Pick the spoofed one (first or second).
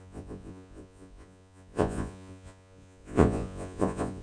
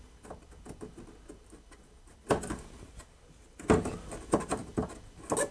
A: first